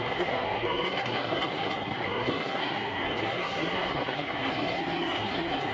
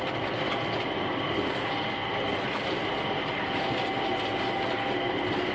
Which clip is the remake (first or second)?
first